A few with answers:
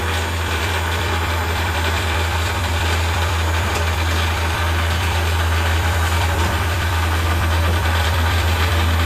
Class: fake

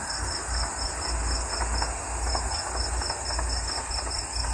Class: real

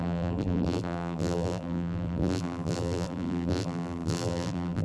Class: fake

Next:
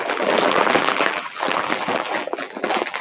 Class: fake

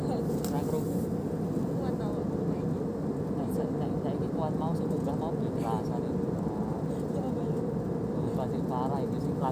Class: real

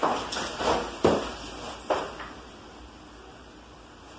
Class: real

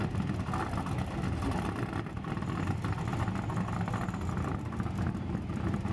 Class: fake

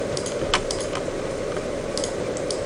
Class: fake